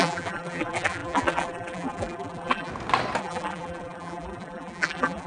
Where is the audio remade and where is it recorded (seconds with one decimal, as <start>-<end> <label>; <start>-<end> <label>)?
0.0-2.7 remade; 2.7-3.2 recorded; 3.2-5.3 remade